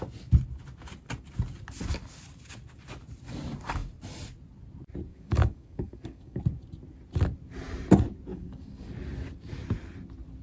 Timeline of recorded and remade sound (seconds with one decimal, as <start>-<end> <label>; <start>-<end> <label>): 0.0-5.1 recorded; 5.1-6.4 remade; 6.4-8.3 recorded; 8.3-8.9 remade; 8.9-10.4 recorded